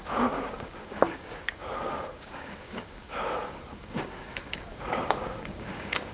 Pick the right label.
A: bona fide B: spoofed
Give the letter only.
B